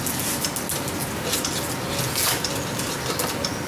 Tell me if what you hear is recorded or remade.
recorded